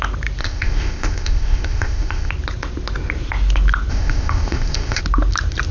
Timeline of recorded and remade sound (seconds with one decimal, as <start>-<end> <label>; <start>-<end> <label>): 0.0-0.4 recorded; 0.4-2.3 remade; 2.3-3.9 recorded; 3.9-5.0 remade; 5.0-5.7 recorded

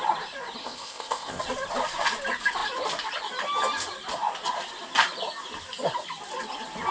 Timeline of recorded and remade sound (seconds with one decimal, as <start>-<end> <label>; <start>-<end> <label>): 0.0-0.6 recorded; 0.6-1.4 remade; 1.4-6.9 recorded

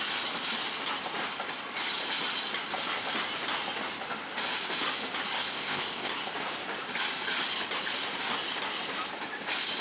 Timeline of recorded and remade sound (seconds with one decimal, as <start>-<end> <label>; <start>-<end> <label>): 0.0-5.5 recorded; 5.5-6.1 remade; 6.1-9.8 recorded

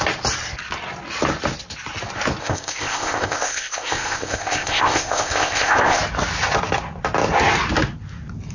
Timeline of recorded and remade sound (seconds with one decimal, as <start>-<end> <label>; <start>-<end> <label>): 0.0-2.4 recorded; 2.4-6.0 remade; 6.0-8.5 recorded